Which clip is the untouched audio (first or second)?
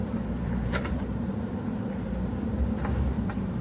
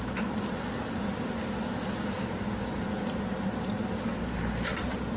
second